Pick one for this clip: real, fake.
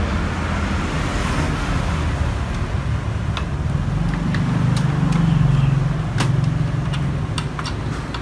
real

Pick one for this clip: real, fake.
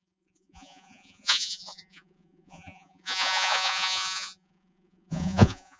fake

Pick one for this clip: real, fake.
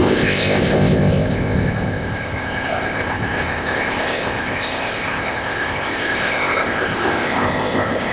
fake